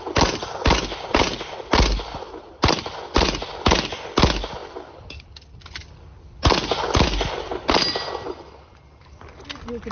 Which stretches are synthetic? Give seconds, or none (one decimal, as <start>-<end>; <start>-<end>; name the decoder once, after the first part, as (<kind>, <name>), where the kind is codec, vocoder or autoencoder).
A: none